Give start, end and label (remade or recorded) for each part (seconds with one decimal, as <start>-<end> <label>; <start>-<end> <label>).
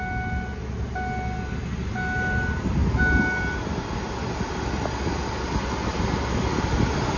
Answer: 0.0-7.2 recorded